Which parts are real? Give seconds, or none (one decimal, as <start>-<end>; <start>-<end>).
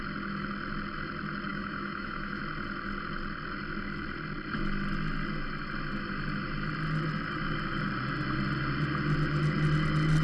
0.0-1.5; 2.4-10.2